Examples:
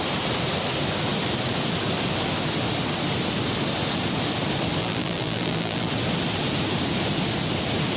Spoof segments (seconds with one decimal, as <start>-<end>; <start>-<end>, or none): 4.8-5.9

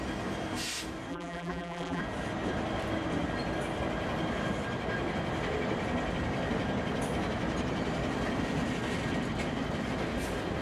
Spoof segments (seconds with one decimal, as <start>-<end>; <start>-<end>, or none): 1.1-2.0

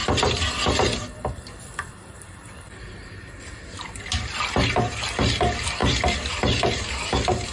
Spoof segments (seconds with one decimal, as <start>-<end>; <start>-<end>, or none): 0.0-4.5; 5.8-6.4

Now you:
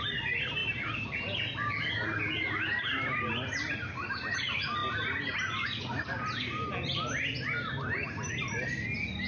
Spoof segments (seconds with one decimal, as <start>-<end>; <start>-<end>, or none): 0.6-1.9

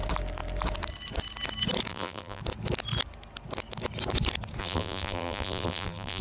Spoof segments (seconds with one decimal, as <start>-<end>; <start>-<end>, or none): 1.9-2.4; 4.6-6.2